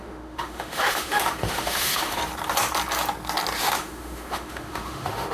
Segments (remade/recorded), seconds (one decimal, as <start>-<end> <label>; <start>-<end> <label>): 0.0-2.2 remade; 2.2-3.6 recorded; 3.6-5.3 remade